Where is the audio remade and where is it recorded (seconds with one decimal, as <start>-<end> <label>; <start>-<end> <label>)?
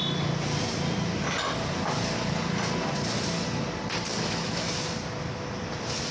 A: 0.0-4.1 recorded; 4.1-4.7 remade; 4.7-6.1 recorded